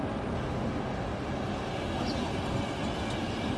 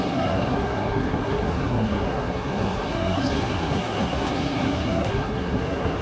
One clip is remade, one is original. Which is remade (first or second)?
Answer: second